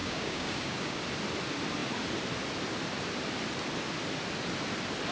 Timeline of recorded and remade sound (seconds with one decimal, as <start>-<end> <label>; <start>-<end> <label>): 0.0-1.0 remade; 1.0-5.1 recorded